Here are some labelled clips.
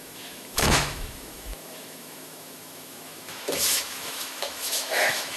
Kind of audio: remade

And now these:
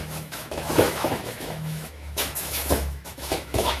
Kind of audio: remade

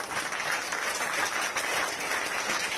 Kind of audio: recorded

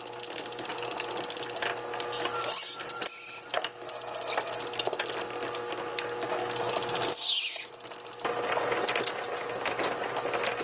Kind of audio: recorded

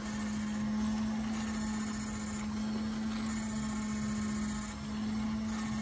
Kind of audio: recorded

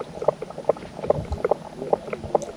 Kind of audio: recorded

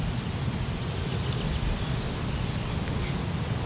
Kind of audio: recorded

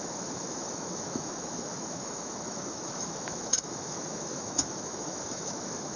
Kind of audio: remade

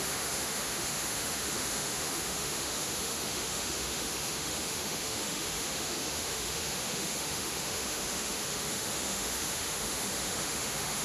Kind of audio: remade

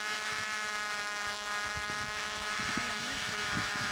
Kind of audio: remade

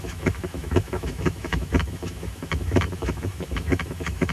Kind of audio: remade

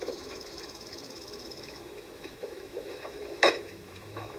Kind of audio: remade